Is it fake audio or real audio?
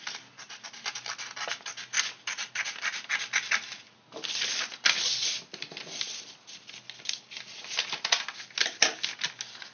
real